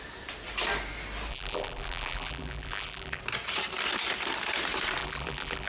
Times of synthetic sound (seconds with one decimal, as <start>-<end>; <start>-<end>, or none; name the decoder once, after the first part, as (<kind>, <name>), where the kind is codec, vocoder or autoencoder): 1.3-3.2 (vocoder, BigVGAN v2); 5.0-5.7